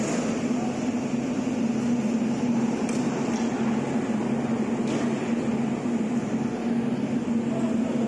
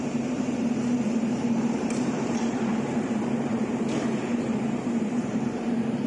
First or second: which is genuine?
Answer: first